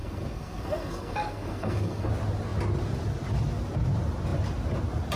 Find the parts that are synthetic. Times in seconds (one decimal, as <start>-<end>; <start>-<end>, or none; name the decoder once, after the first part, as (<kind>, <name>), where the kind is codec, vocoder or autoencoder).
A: 0.0-2.1 (codec, SNAC)